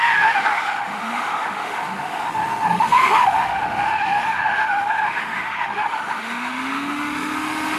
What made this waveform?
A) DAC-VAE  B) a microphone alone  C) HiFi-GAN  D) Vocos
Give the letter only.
A